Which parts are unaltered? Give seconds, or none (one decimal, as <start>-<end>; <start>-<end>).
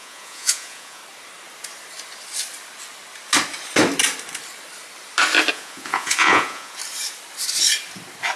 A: 1.0-5.5; 6.8-8.4